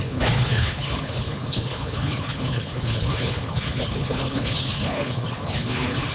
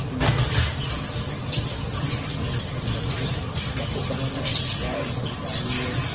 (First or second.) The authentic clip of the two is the second